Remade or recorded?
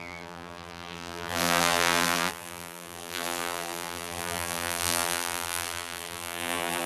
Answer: remade